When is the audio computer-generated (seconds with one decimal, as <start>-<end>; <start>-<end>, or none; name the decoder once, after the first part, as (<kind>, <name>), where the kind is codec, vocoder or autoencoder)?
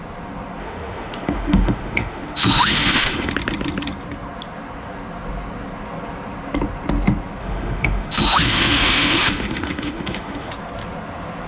0.6-3.3 (autoencoder, DAC-VAE); 7.4-10.5